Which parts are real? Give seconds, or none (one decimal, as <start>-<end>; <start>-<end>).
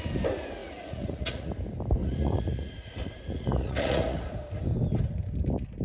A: 0.0-0.6; 1.5-2.0; 4.2-5.8